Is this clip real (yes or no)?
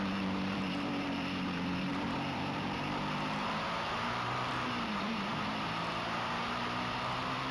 no